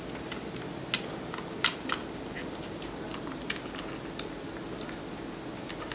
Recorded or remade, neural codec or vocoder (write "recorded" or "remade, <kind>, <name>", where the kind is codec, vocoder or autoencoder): recorded